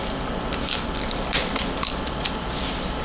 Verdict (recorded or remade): recorded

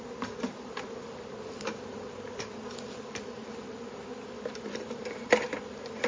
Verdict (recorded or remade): recorded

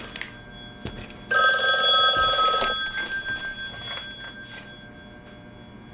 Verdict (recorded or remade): recorded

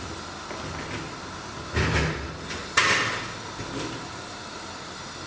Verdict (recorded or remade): recorded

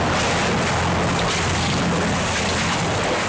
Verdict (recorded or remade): recorded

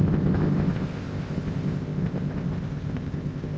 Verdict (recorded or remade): remade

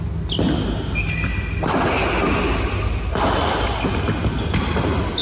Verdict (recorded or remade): recorded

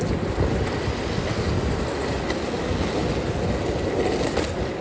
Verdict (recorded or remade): recorded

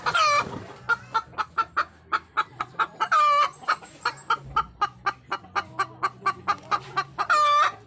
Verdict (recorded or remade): recorded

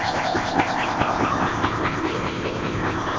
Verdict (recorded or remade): remade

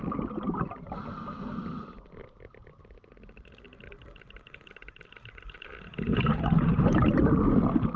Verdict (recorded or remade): recorded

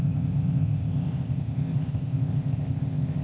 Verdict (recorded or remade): remade